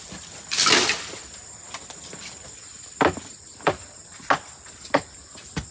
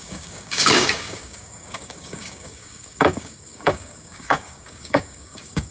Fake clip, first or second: second